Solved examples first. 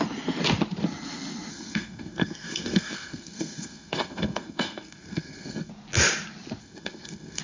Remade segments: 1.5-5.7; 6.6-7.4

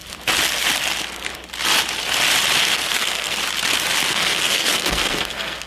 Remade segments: 2.6-3.4; 4.1-5.7

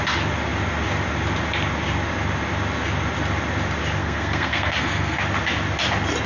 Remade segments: 4.0-5.2

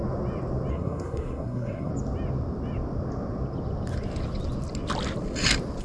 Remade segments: 0.7-1.9

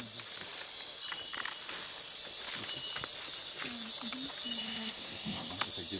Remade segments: 4.6-5.5